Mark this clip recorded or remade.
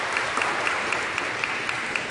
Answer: recorded